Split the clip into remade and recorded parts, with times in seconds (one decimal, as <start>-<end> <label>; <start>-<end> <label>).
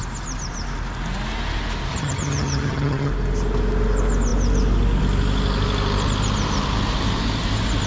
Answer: 0.0-1.9 recorded; 1.9-3.1 remade; 3.1-7.9 recorded